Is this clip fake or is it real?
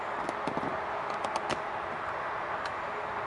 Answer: real